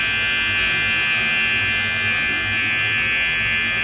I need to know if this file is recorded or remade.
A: recorded